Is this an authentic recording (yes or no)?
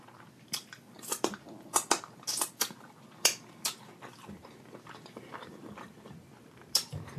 no